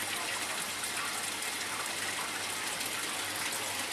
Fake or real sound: real